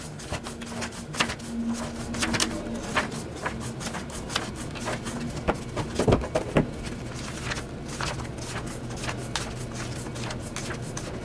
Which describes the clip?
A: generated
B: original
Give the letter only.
B